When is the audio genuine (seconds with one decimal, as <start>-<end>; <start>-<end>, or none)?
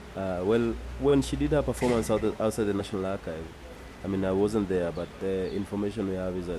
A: 0.0-1.1; 2.8-6.6